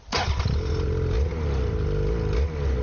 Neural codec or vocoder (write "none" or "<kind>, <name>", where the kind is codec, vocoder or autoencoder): none